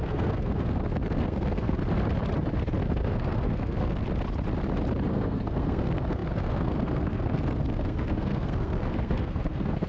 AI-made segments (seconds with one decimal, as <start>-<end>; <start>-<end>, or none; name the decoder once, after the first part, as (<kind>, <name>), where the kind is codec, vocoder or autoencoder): 0.0-1.8 (codec, SNAC); 2.8-4.0; 5.1-9.9